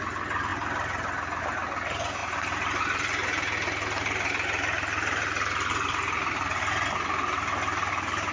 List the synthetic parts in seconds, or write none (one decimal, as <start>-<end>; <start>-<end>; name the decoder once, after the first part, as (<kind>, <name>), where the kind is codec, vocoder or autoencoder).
none